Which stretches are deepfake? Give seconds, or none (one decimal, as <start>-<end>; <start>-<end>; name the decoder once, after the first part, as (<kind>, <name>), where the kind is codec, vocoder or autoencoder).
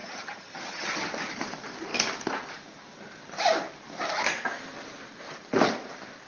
0.0-1.1 (vocoder, HiFi-GAN)